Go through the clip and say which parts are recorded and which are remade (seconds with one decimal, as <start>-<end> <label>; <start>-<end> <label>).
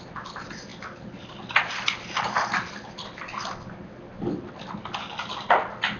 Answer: 0.0-6.0 recorded